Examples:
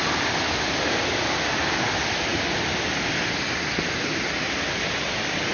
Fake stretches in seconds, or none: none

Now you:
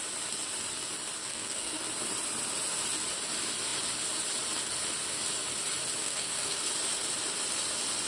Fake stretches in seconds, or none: 1.2-1.8; 6.0-6.7

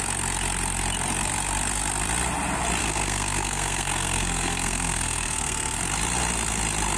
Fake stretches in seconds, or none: 2.8-5.8

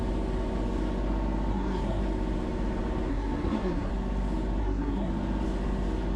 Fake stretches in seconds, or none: 1.5-2.0; 3.1-3.9; 4.6-5.1

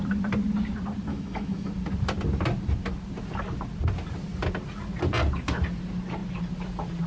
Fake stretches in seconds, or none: 1.1-1.7